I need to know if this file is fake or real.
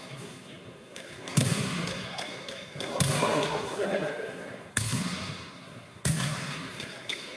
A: fake